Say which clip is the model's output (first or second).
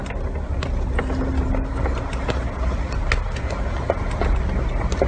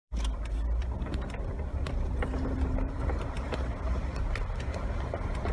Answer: second